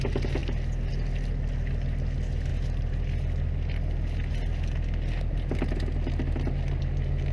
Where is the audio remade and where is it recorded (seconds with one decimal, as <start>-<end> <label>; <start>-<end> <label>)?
0.0-7.3 recorded